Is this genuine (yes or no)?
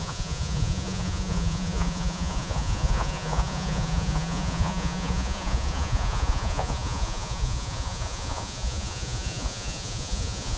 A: no